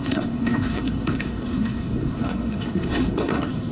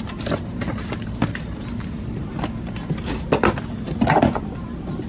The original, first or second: second